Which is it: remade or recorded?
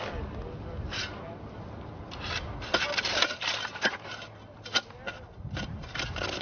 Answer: recorded